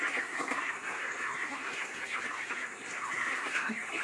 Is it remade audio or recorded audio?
remade